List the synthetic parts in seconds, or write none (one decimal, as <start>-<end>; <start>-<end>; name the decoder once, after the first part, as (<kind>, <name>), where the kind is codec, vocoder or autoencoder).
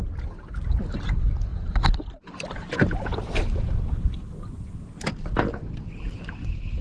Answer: none